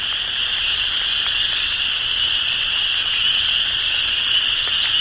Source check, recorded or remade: recorded